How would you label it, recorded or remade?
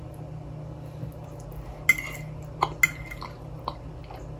recorded